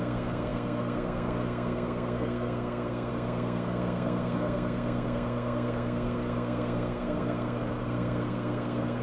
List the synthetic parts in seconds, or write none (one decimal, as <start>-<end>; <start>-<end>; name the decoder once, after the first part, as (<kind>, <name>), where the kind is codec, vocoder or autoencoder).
0.0-9.0 (codec, SNAC)